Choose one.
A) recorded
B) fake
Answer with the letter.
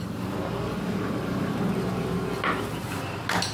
A